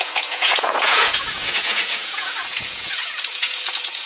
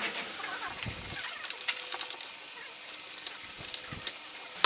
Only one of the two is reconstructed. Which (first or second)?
first